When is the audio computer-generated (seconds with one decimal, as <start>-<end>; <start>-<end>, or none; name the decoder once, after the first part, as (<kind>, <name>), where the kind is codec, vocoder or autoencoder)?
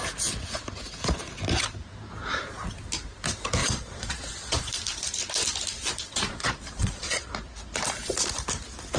3.6-4.7 (vocoder, Vocos); 6.1-7.3